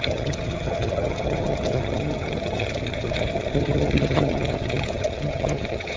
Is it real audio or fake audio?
fake